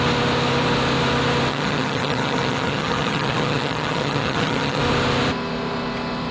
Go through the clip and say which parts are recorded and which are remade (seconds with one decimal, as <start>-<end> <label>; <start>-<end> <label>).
0.0-1.5 recorded; 1.5-4.8 remade; 4.8-6.3 recorded